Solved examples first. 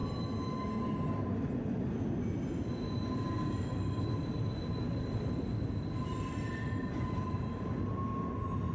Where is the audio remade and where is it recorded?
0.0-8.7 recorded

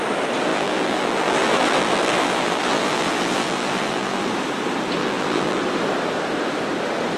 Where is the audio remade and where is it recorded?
0.0-0.5 recorded; 0.5-4.3 remade; 4.3-5.0 recorded; 5.0-5.6 remade; 5.6-7.2 recorded